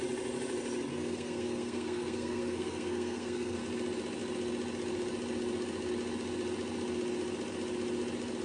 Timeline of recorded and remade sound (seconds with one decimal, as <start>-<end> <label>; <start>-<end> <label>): 0.0-0.9 recorded; 0.9-3.6 remade; 3.6-8.4 recorded